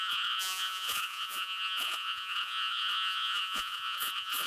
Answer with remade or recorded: remade